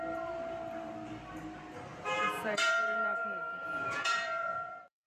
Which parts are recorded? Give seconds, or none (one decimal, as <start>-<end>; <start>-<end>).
0.0-1.9